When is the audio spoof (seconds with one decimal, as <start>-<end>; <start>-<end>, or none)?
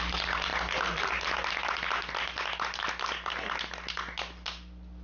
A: none